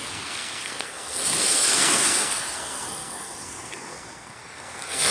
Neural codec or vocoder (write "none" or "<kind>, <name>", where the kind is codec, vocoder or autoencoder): codec, SNAC